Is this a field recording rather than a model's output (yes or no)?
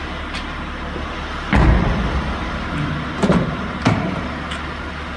yes